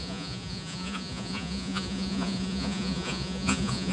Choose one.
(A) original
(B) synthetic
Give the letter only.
B